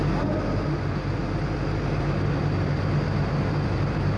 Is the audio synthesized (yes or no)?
no